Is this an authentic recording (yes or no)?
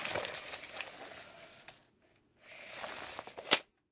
yes